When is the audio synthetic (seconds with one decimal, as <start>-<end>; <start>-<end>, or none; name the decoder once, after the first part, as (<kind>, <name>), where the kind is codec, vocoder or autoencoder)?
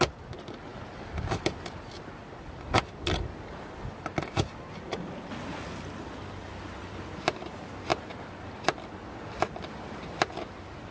none